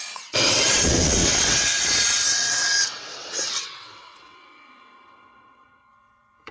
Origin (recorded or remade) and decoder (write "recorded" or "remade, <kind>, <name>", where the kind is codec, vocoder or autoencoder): remade, vocoder, WaveNeXt